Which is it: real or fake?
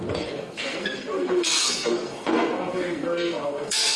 fake